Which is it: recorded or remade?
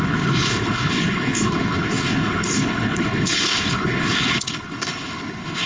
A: remade